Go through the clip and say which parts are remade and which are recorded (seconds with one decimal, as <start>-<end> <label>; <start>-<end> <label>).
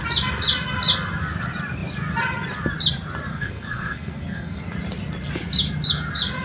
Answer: 0.0-3.3 recorded; 3.3-4.6 remade; 4.6-6.4 recorded